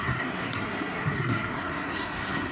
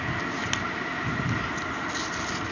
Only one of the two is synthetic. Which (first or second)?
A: first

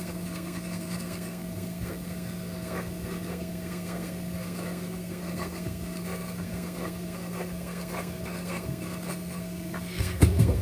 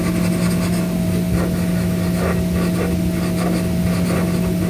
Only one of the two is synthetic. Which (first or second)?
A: first